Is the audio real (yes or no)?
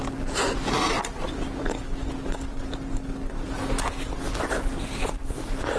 yes